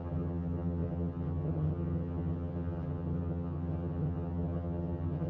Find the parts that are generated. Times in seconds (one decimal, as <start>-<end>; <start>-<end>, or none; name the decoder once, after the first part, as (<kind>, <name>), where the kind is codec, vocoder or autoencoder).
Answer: 0.0-5.3 (vocoder, HiFi-GAN)